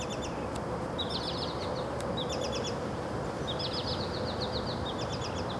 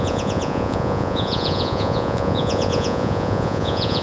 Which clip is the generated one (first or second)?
second